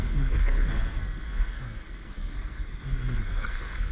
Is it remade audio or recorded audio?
remade